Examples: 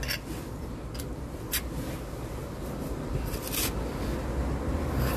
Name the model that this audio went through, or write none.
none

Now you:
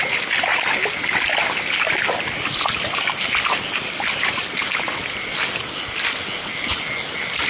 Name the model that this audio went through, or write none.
none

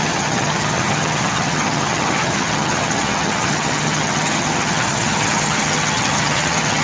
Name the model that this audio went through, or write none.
vocoder, HiFi-GAN